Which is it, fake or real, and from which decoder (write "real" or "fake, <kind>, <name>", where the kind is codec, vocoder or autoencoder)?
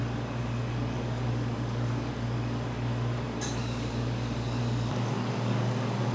fake, codec, DAC